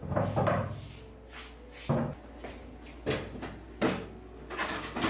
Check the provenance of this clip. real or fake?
real